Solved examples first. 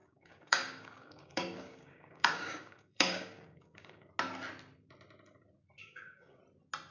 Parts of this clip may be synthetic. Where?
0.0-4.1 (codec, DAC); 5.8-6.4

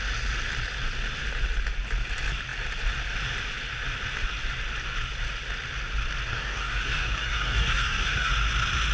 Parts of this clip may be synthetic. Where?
6.3-8.3 (codec, DAC)

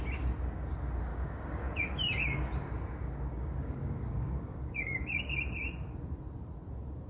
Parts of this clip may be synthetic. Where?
1.1-1.6 (codec, DAC); 3.3-5.0

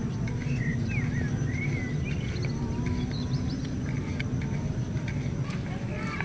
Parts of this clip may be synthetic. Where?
none

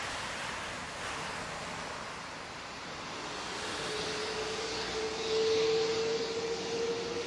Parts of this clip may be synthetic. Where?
4.2-7.3 (codec, DAC)

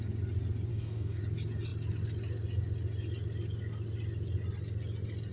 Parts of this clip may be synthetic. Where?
0.7-1.2 (codec, DAC)

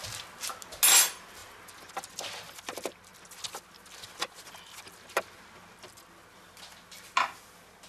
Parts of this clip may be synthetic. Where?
none

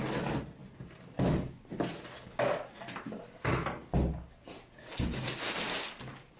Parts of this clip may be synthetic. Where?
none